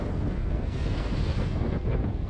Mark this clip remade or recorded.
remade